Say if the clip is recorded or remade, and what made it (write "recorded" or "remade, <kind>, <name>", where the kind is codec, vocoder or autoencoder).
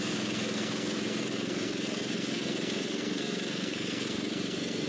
remade, codec, SNAC